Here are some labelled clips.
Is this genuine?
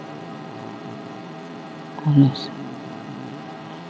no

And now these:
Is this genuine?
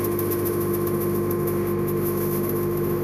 no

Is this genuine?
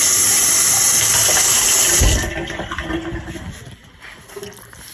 yes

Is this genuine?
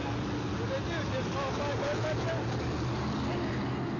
yes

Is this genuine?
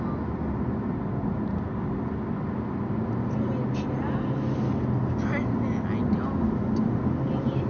yes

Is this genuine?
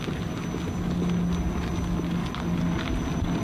yes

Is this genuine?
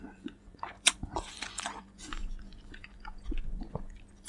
no